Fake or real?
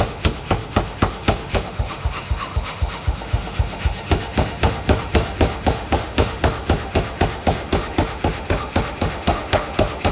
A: fake